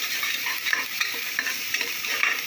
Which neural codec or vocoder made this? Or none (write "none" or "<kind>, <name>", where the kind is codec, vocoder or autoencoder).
vocoder, BigVGAN v2